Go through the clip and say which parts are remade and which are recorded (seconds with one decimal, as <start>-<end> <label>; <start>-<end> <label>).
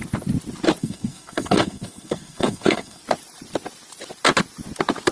0.0-0.8 recorded; 0.8-3.0 remade; 3.0-5.1 recorded